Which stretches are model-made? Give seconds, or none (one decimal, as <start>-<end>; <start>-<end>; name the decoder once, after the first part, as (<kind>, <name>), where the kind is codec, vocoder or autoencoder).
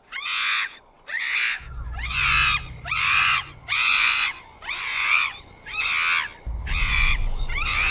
0.0-5.9 (vocoder, Vocos); 6.8-7.9